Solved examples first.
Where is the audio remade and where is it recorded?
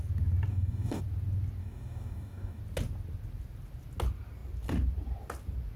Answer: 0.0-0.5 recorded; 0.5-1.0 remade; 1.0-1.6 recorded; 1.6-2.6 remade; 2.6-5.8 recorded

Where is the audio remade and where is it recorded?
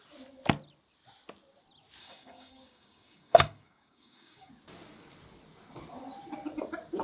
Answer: 0.0-2.0 recorded; 2.0-4.5 remade; 4.5-7.0 recorded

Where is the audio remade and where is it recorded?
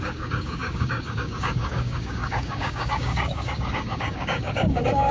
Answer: 0.0-5.1 remade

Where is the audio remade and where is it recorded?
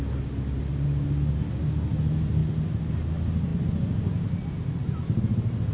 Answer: 0.0-5.7 recorded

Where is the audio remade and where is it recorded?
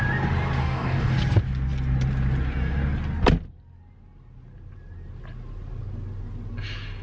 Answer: 0.0-0.6 recorded; 0.6-1.1 remade; 1.1-7.0 recorded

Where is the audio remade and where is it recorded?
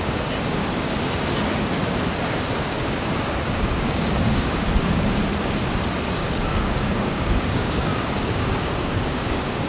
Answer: 0.0-0.6 remade; 0.6-2.7 recorded; 2.7-5.2 remade; 5.2-6.1 recorded; 6.1-9.7 remade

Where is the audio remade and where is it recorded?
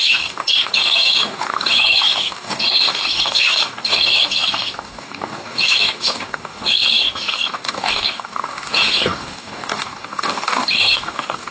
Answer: 0.0-11.5 remade